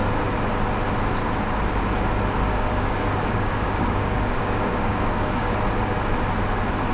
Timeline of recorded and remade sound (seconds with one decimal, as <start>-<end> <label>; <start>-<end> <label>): 0.0-2.5 recorded; 2.5-5.5 remade; 5.5-6.9 recorded